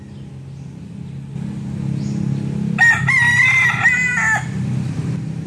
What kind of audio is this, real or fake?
real